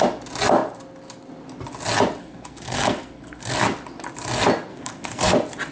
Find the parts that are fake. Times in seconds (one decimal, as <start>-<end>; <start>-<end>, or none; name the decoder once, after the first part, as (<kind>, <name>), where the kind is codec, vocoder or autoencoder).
2.2-3.5 (codec, SNAC); 4.7-5.3